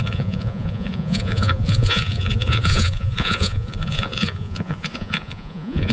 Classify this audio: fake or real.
fake